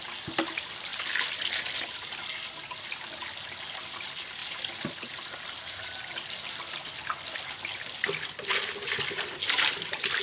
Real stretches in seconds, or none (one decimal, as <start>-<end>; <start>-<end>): 0.0-10.2